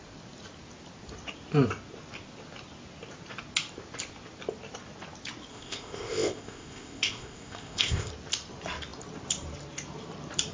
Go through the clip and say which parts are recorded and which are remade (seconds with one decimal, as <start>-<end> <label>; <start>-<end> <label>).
0.0-5.5 recorded; 5.5-8.1 remade; 8.1-10.5 recorded